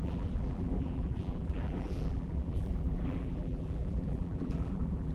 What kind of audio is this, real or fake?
fake